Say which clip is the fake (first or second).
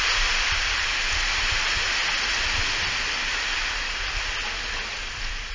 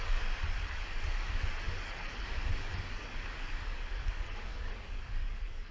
second